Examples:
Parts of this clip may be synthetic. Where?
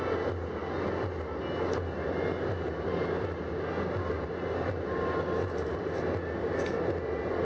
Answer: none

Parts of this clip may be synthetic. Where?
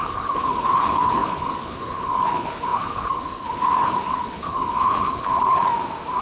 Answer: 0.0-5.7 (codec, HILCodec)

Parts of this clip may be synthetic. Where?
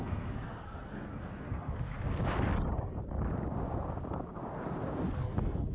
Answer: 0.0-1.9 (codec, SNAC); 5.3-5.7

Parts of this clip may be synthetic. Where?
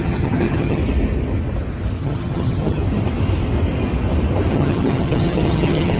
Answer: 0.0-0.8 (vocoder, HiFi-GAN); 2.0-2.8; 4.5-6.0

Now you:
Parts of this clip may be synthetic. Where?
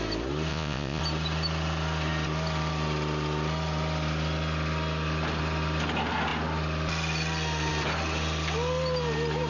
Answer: 0.5-1.0 (vocoder, Vocos)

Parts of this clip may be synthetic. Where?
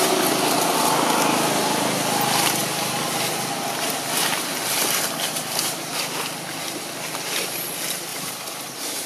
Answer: 8.1-9.1 (vocoder, BigVGAN v2)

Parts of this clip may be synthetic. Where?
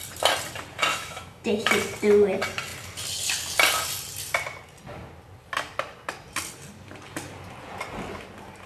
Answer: 0.9-1.7 (autoencoder, DAC-VAE)